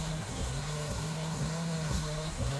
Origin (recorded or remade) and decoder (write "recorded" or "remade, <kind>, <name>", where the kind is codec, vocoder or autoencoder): remade, codec, SNAC